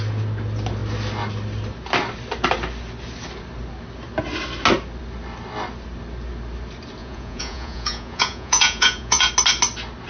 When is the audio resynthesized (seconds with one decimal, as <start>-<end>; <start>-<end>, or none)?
7.0-9.3